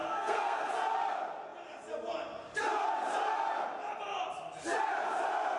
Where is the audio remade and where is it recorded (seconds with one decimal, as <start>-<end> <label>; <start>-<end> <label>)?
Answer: 0.0-0.7 remade; 0.7-5.6 recorded